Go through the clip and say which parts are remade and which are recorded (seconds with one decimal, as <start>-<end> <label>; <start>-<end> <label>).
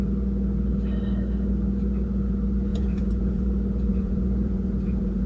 0.0-2.7 recorded; 2.7-3.4 remade; 3.4-3.9 recorded; 3.9-5.3 remade